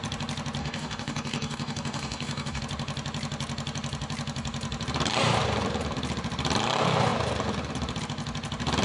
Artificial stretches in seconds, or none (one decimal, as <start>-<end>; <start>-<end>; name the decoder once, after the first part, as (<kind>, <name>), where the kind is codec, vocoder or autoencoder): 0.6-2.6 (codec, DAC)